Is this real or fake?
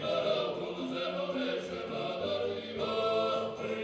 real